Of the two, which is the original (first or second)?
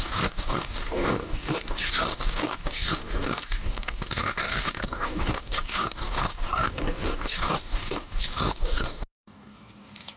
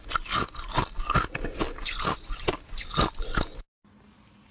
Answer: second